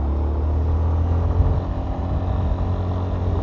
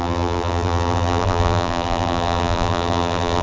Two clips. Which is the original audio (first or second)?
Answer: first